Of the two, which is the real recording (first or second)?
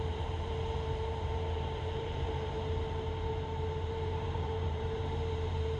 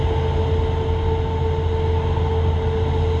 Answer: second